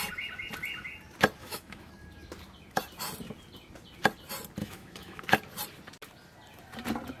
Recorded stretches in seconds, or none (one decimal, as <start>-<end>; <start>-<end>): 0.0-1.4; 1.9-4.6; 5.2-7.2